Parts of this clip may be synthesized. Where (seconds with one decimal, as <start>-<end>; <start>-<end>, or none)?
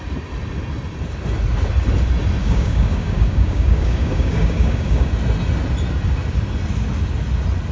2.4-5.1